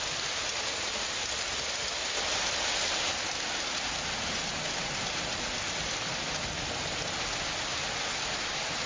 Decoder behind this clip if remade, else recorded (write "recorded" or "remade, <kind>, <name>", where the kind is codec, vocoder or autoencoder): recorded